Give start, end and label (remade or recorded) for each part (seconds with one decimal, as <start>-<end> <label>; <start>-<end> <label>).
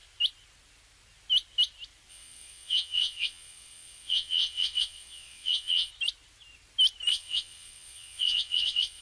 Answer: 0.0-2.1 recorded; 2.1-5.9 remade; 5.9-7.1 recorded; 7.1-9.0 remade